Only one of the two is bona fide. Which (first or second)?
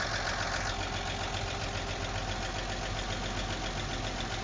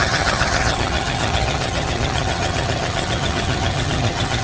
first